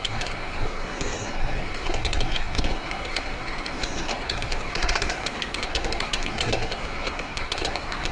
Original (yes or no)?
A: no